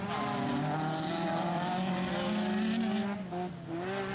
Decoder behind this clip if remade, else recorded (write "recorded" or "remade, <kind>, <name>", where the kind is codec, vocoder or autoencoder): recorded